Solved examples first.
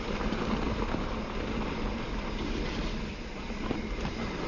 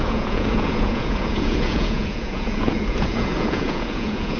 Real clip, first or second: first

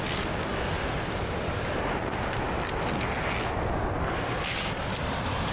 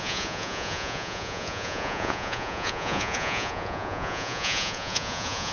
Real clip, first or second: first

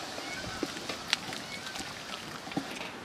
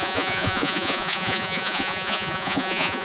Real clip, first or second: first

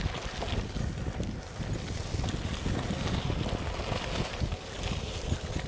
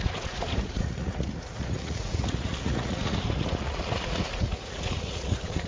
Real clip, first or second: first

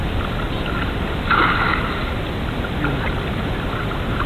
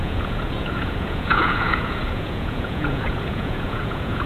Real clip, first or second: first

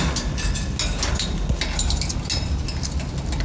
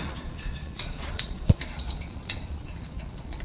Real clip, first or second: first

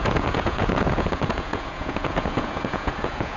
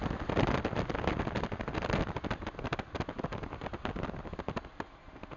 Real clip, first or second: second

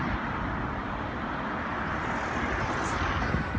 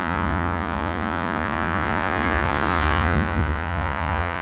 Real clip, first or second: first